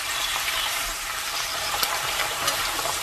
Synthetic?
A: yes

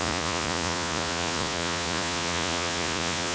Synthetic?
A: yes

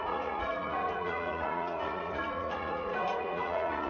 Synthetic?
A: yes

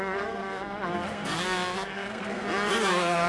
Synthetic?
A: yes